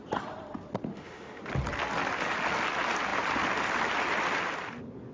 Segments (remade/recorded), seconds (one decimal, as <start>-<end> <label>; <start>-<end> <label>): 0.0-0.9 recorded; 0.9-1.4 remade; 1.4-5.1 recorded